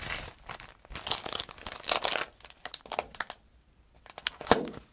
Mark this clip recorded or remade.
recorded